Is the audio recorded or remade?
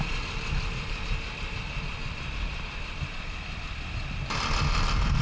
remade